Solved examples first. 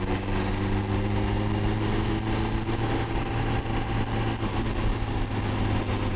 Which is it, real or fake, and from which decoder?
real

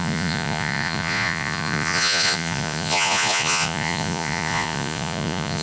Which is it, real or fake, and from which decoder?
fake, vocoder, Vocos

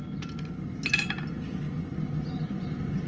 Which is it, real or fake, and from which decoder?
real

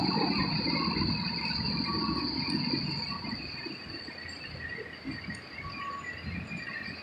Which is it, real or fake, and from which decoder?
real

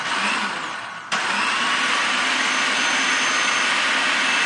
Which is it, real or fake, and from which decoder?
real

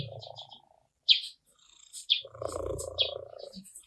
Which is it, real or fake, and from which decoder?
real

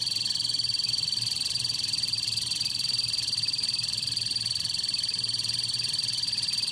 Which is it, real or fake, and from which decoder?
real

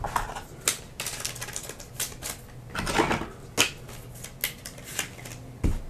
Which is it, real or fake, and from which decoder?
real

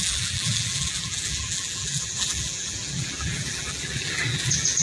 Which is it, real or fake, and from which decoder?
fake, vocoder, BigVGAN v2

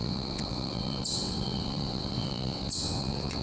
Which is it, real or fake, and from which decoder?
fake, vocoder, WaveNeXt